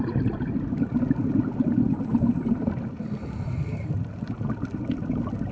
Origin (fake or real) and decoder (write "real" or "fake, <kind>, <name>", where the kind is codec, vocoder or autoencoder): real